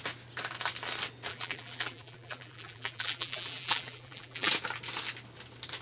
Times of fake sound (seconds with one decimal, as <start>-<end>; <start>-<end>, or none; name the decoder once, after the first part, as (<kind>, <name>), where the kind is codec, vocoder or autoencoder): 1.3-4.5 (vocoder, BigVGAN v2)